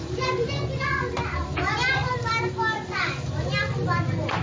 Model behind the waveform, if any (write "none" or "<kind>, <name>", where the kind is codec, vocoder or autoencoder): none